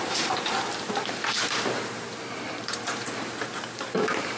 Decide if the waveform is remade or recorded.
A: remade